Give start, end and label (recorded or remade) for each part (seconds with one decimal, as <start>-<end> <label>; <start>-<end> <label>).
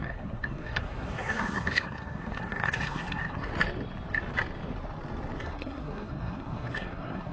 0.0-3.5 remade; 3.5-5.4 recorded; 5.4-7.3 remade